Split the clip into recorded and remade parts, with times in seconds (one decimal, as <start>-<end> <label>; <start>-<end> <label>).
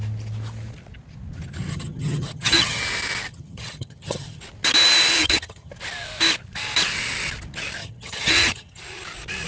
0.0-1.7 recorded; 1.7-2.8 remade; 2.8-3.3 recorded; 3.3-4.4 remade; 4.4-5.2 recorded; 5.2-5.7 remade; 5.7-7.8 recorded; 7.8-8.8 remade; 8.8-9.5 recorded